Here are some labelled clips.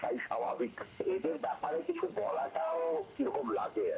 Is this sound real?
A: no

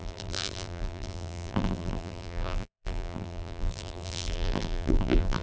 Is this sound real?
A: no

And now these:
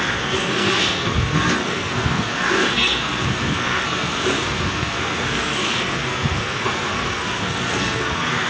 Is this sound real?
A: no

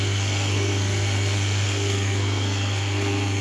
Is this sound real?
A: no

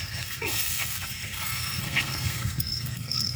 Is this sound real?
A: no